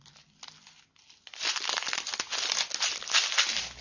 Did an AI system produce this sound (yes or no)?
no